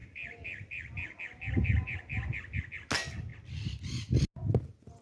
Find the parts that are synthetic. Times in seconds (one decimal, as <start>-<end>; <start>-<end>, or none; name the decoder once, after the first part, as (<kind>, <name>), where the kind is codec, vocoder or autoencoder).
0.0-1.2 (vocoder, BigVGAN v2)